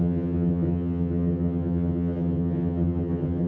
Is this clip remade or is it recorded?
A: remade